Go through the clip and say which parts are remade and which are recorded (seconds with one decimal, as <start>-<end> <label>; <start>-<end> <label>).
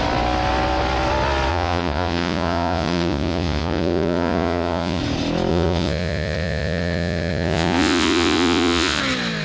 0.0-1.5 recorded; 1.5-5.0 remade; 5.0-5.5 recorded; 5.5-9.0 remade; 9.0-9.4 recorded